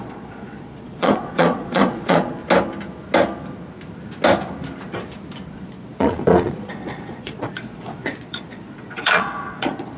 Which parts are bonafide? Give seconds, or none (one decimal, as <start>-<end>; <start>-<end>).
2.4-5.5